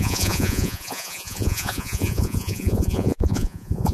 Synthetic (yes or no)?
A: yes